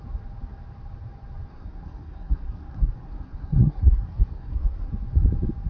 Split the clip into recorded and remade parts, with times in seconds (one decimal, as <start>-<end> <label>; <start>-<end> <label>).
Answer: 0.0-1.5 recorded; 1.5-4.9 remade; 4.9-5.7 recorded